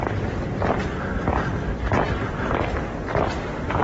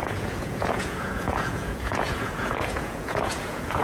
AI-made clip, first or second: second